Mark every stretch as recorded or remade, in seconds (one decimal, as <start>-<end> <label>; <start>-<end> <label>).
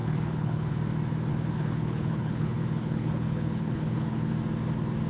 0.0-0.7 remade; 0.7-1.3 recorded; 1.3-4.3 remade; 4.3-5.1 recorded